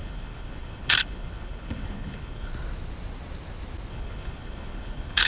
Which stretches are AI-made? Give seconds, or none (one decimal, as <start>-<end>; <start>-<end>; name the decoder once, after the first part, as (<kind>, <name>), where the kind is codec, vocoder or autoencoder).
0.0-2.5 (codec, HILCodec); 3.9-5.3